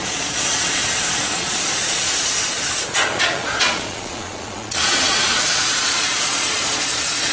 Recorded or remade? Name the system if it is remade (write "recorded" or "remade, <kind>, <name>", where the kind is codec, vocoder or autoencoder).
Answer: remade, vocoder, Vocos